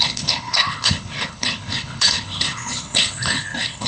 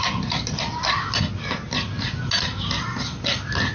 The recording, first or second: second